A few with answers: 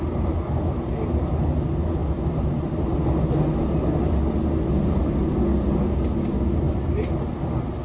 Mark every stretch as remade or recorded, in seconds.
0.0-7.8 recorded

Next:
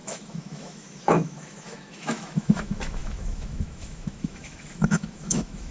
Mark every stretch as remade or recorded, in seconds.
0.0-5.7 remade

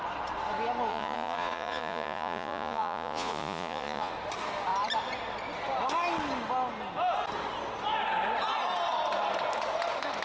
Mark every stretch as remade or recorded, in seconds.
0.0-0.9 recorded; 0.9-4.1 remade; 4.1-10.2 recorded

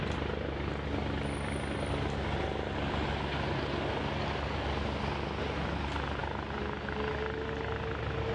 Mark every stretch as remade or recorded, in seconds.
0.0-8.3 recorded

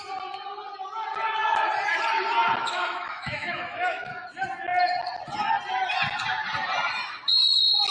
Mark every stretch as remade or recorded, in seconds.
0.0-2.6 recorded; 2.6-4.1 remade; 4.1-7.9 recorded